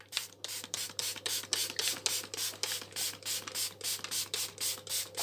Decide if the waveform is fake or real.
real